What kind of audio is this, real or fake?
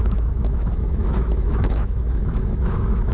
fake